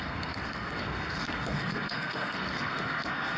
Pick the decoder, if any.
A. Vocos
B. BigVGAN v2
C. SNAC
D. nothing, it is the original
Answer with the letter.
C